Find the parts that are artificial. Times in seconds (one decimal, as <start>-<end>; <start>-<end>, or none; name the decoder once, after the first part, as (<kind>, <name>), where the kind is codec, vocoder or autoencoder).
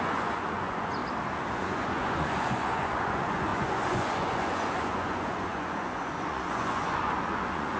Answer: 0.0-1.0 (vocoder, Vocos); 1.5-7.8